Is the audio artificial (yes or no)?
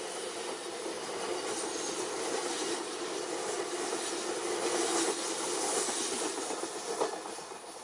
no